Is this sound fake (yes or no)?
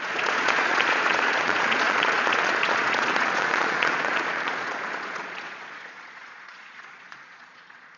yes